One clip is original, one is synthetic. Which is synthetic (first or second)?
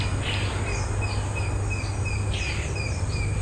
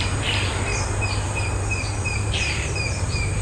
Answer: second